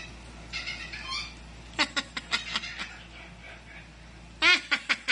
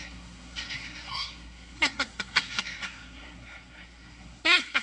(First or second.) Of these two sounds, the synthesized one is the second